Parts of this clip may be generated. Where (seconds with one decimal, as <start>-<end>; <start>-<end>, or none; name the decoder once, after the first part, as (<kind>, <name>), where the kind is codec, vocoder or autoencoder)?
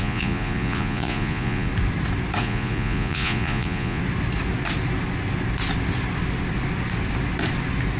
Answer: 0.0-1.7 (vocoder, Vocos); 2.4-4.0